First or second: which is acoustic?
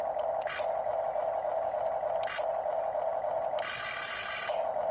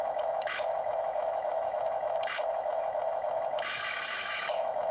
first